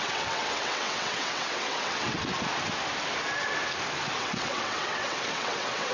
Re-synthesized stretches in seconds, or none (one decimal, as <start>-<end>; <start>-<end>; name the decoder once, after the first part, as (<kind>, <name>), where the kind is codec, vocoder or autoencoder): 0.0-2.3 (vocoder, WaveNeXt); 4.2-5.9